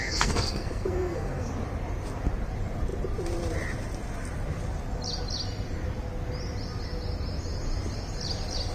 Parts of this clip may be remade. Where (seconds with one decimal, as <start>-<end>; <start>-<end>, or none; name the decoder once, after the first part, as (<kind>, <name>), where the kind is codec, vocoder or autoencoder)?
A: 0.0-1.5 (codec, SNAC)